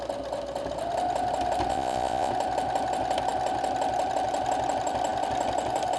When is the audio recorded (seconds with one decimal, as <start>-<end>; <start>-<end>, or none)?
0.0-1.7; 2.3-6.0

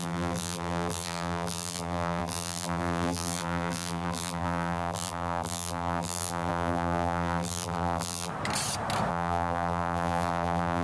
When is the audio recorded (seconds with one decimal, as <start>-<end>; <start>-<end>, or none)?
8.3-9.1

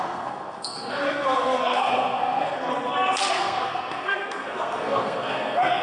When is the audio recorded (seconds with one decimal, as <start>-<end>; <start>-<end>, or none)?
2.7-3.3